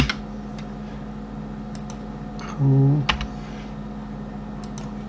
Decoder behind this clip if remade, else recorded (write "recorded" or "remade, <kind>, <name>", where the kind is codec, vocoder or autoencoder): recorded